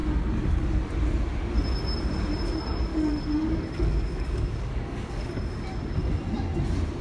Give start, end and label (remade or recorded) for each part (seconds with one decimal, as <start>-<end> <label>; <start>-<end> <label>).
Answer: 0.0-0.8 remade; 0.8-2.9 recorded; 2.9-5.4 remade; 5.4-7.0 recorded